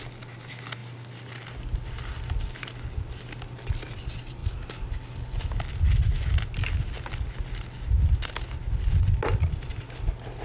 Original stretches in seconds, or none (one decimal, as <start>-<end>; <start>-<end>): 0.0-10.4